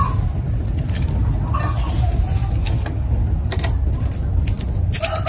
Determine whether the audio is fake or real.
real